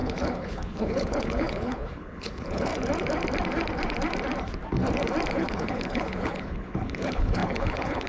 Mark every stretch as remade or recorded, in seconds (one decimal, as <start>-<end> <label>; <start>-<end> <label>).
0.0-2.7 remade; 2.7-5.3 recorded; 5.3-8.1 remade